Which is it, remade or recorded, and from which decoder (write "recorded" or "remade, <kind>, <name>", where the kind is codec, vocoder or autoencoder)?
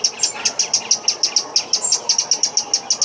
recorded